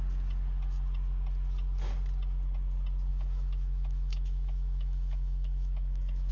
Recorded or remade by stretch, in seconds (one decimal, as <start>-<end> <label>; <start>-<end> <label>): 0.0-3.1 recorded; 3.1-6.3 remade